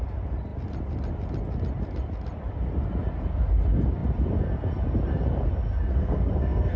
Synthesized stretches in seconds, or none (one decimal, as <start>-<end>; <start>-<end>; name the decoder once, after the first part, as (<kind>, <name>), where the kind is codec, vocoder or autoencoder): 5.9-6.8 (codec, SNAC)